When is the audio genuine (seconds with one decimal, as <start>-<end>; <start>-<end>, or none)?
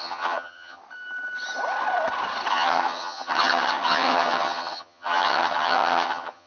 0.8-2.5